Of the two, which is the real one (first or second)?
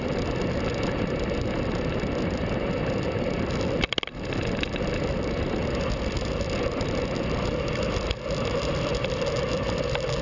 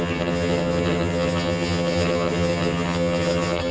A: first